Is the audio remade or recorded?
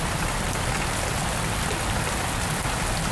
recorded